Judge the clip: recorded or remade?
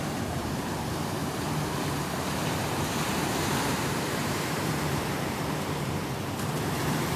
remade